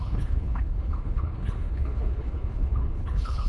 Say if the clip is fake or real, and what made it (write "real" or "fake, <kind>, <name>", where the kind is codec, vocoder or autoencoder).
fake, codec, HILCodec